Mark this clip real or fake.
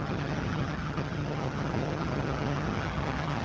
fake